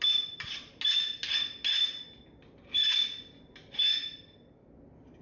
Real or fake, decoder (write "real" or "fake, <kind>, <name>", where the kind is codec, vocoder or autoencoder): real